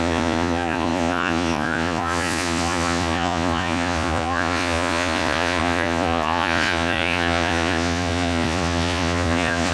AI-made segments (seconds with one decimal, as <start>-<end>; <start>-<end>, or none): 0.0-9.7